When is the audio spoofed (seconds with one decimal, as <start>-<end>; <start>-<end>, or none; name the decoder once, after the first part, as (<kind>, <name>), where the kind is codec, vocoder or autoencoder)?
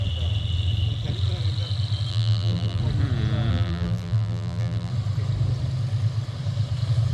2.1-2.8 (vocoder, BigVGAN v2); 3.5-4.9